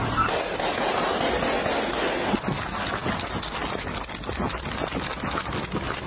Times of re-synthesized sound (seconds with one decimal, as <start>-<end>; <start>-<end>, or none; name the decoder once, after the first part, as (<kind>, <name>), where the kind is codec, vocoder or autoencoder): none